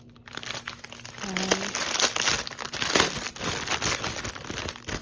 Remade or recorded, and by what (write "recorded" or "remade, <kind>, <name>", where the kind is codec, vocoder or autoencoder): recorded